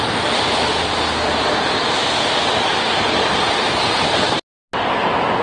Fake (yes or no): no